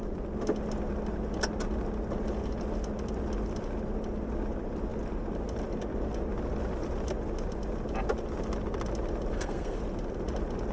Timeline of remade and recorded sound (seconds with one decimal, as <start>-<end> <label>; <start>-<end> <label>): 0.0-9.3 recorded; 9.3-9.8 remade; 9.8-10.7 recorded